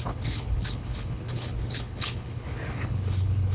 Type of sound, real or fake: fake